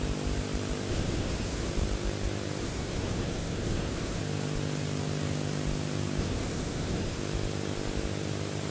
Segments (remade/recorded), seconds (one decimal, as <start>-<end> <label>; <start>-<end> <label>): 0.0-0.9 recorded; 0.9-1.7 remade; 1.7-2.6 recorded; 2.6-4.2 remade; 4.2-6.2 recorded; 6.2-7.2 remade; 7.2-8.7 recorded